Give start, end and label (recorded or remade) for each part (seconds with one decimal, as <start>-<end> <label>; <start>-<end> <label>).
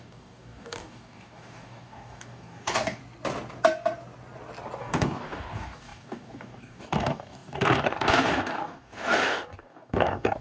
0.0-3.0 remade; 3.0-4.8 recorded; 4.8-10.4 remade